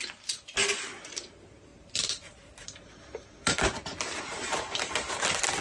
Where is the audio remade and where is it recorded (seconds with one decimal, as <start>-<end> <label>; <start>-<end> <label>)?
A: 0.0-1.7 recorded; 1.7-5.1 remade; 5.1-5.6 recorded

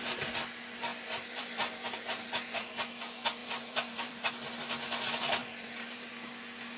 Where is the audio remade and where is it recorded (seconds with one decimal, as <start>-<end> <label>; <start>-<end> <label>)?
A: 0.0-0.9 recorded; 0.9-2.7 remade; 2.7-3.4 recorded; 3.4-4.3 remade; 4.3-5.4 recorded; 5.4-6.1 remade; 6.1-6.8 recorded

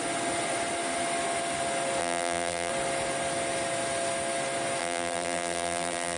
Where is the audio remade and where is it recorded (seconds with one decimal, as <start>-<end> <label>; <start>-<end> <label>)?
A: 0.0-2.0 recorded; 2.0-2.7 remade; 2.7-4.8 recorded; 4.8-6.2 remade

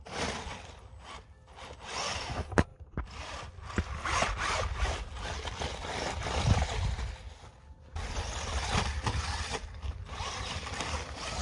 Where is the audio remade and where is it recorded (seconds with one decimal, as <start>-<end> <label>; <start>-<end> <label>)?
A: 0.0-2.7 recorded; 2.7-3.7 remade; 3.7-11.4 recorded

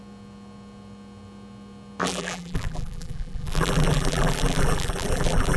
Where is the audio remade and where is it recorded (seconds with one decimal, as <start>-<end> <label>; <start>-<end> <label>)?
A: 0.0-2.0 recorded; 2.0-5.6 remade